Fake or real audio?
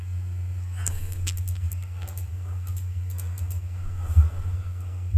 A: fake